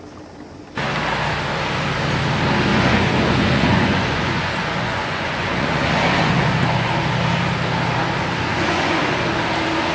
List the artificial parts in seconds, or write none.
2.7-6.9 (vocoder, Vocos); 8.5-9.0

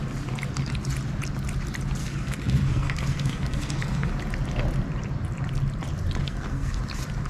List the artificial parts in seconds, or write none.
2.0-4.1 (codec, SNAC); 6.2-6.8

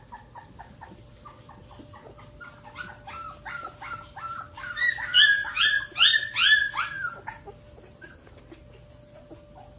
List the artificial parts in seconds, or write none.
none

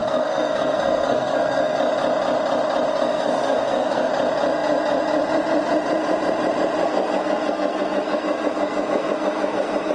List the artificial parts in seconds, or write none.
0.0-1.8 (codec, SNAC); 2.9-4.1; 6.8-9.9